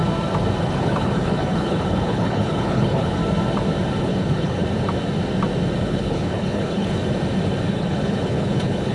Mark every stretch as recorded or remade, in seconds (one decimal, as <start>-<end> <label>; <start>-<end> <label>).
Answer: 0.0-0.6 recorded; 0.6-3.2 remade; 3.2-4.0 recorded; 4.0-4.6 remade; 4.6-5.8 recorded; 5.8-7.0 remade; 7.0-7.7 recorded; 7.7-8.9 remade